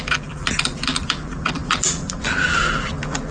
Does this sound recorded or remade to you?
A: remade